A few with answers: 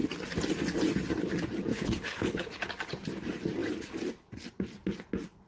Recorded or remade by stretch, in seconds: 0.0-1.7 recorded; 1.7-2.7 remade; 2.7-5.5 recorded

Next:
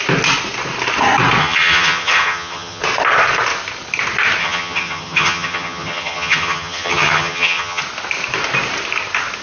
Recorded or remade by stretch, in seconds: 0.0-1.4 recorded; 1.4-2.8 remade; 2.8-4.4 recorded; 4.4-7.8 remade; 7.8-9.4 recorded

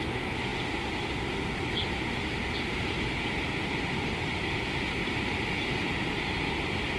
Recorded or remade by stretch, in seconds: 0.0-7.0 recorded

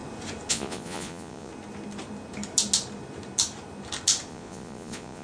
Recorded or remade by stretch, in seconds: 0.0-0.5 recorded; 0.5-1.5 remade; 1.5-4.3 recorded; 4.3-5.2 remade

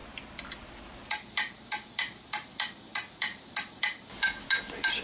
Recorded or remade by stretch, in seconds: 0.0-5.0 recorded